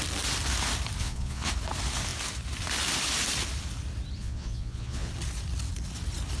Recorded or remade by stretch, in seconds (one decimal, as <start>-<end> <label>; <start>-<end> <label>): 0.0-1.0 recorded; 1.0-1.5 remade; 1.5-4.2 recorded; 4.2-5.1 remade; 5.1-6.4 recorded